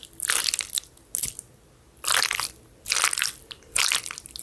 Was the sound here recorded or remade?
recorded